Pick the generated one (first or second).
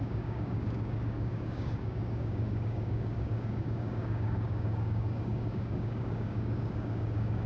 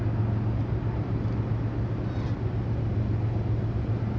first